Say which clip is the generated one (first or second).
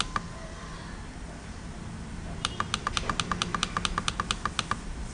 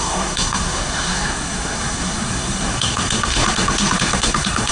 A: second